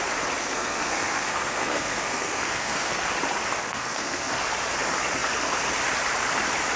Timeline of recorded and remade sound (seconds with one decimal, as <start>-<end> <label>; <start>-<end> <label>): 0.0-0.4 recorded; 0.4-3.0 remade; 3.0-3.6 recorded; 3.6-4.3 remade; 4.3-6.8 recorded